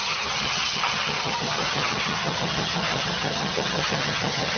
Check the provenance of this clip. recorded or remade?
remade